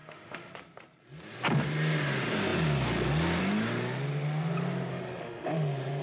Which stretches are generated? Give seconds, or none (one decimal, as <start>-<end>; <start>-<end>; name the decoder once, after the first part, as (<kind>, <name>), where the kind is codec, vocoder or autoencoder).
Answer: 0.0-0.5 (autoencoder, DAC-VAE); 4.9-6.0